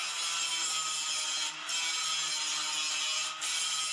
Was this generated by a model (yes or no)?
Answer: no